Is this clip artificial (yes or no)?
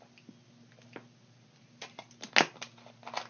no